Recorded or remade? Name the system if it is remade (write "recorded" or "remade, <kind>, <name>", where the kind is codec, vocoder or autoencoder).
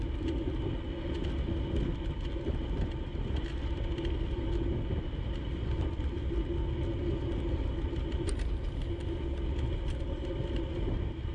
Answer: recorded